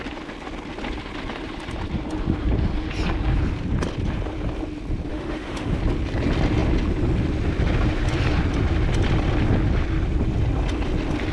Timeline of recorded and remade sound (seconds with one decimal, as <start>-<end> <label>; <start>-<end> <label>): 0.0-5.1 recorded; 5.1-5.8 remade; 5.8-11.3 recorded